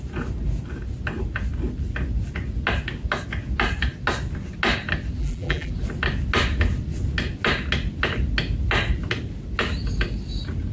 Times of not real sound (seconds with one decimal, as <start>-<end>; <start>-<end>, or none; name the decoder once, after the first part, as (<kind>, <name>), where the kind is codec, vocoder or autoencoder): 5.2-5.7 (vocoder, BigVGAN v2)